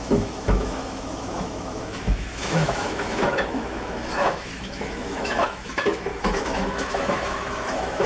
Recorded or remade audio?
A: remade